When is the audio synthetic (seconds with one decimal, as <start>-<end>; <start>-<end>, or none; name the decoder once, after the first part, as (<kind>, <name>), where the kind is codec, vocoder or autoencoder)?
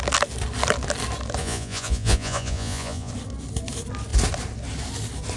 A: 1.4-3.1 (vocoder, Vocos)